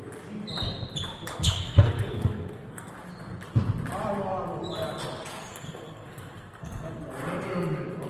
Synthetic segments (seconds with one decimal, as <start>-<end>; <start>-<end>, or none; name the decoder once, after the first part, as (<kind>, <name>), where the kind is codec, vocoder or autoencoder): 1.3-2.9 (codec, SNAC); 5.5-7.0